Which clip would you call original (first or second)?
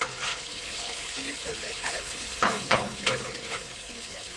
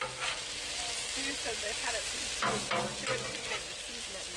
second